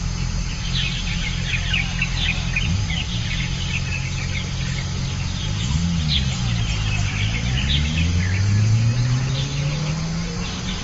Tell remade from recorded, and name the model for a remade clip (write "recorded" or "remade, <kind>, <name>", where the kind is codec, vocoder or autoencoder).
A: recorded